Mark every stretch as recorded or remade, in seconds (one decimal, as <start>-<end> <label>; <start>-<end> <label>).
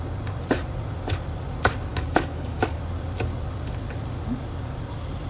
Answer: 0.0-1.9 recorded; 1.9-2.8 remade; 2.8-5.3 recorded